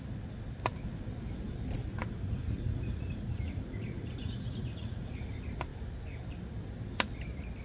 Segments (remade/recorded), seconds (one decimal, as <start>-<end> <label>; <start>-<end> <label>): 0.0-1.9 recorded; 1.9-5.1 remade; 5.1-7.6 recorded